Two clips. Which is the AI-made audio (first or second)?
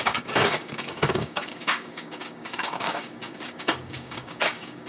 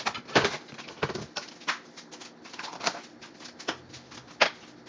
first